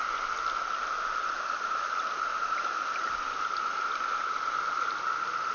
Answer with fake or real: real